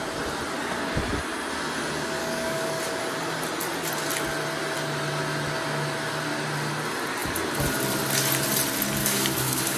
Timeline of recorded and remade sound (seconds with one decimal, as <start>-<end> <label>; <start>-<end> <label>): 0.0-2.2 recorded; 2.2-2.8 remade; 2.8-9.0 recorded; 9.0-9.8 remade